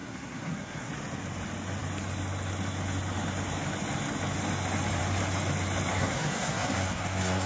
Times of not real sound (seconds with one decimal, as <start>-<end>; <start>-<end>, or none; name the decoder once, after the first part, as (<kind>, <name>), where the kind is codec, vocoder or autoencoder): 0.0-0.9 (codec, SNAC); 5.9-7.5